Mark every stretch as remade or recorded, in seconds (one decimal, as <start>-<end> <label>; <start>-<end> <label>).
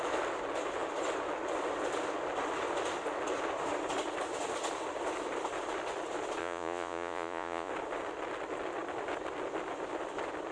0.0-6.4 recorded; 6.4-7.7 remade; 7.7-10.5 recorded